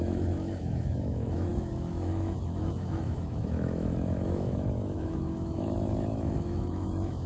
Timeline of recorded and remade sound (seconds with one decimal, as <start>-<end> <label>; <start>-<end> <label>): 0.0-7.3 remade